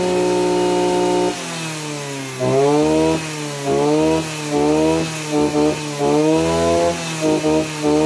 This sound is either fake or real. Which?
real